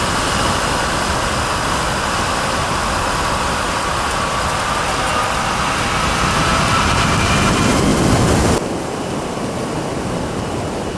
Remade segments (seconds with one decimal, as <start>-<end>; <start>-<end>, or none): none